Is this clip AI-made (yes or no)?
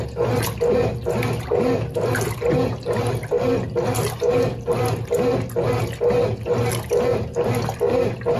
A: no